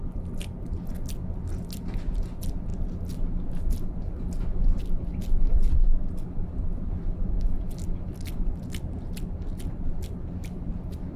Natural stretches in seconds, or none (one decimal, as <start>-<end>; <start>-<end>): 0.0-11.2

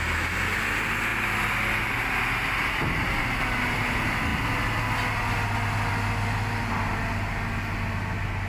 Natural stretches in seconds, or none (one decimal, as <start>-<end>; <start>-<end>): 0.0-8.5

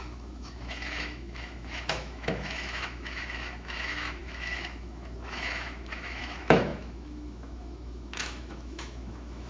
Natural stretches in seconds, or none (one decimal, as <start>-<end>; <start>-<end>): none

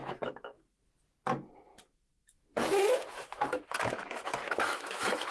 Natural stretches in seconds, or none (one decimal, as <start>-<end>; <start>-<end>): 0.9-1.7

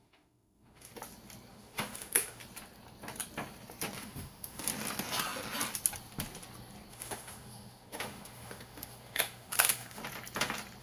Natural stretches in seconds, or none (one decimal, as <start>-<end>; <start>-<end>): 0.9-1.5; 2.4-4.0; 4.7-6.9; 10.0-10.8

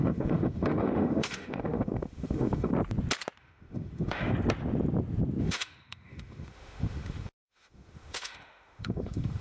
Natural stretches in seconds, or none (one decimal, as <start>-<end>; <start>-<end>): 2.7-3.4; 4.3-5.4

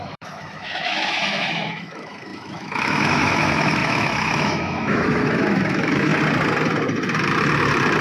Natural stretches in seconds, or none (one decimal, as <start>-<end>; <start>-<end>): 6.1-8.0

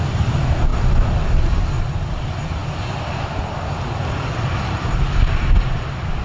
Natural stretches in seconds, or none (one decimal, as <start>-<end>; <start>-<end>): 0.0-6.2